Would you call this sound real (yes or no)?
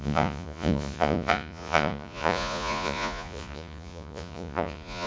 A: no